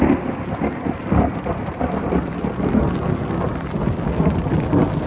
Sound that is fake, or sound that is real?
real